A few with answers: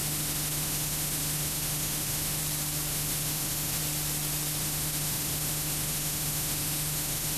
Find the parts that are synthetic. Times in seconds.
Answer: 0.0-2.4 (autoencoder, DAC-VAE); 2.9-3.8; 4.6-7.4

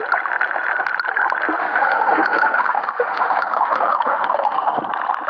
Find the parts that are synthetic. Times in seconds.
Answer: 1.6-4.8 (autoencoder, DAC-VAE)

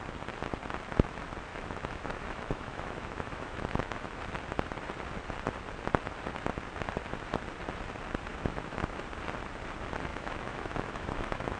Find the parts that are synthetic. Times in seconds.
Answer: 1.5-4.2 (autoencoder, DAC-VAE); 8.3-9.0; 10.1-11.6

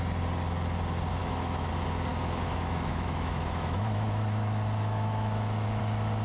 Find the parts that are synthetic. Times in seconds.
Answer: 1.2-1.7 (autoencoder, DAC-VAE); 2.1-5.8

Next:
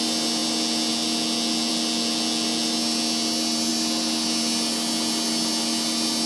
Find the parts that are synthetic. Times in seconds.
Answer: none